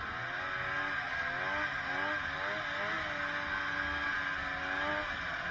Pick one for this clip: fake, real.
real